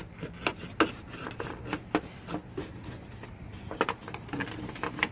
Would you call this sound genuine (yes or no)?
yes